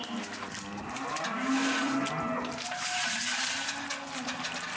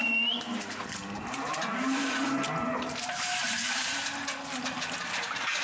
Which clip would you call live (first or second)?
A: first